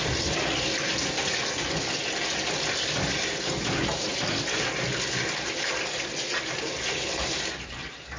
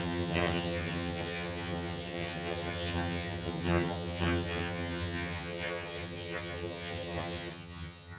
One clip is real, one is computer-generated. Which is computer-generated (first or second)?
second